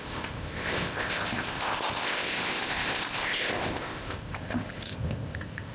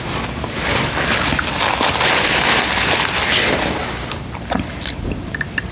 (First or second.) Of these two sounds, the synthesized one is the first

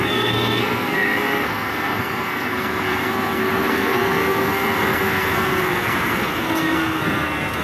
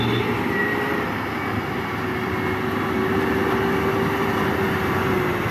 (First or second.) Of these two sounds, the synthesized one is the first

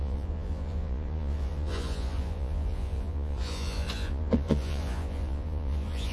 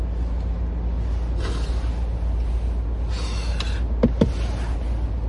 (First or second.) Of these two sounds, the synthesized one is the first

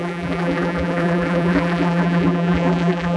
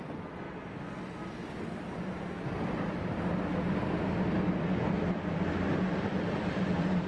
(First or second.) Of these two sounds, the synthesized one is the first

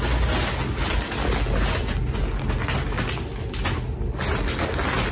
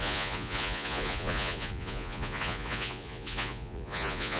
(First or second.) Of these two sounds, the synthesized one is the second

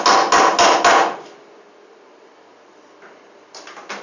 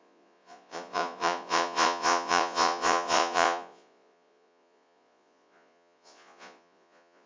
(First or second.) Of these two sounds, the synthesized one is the second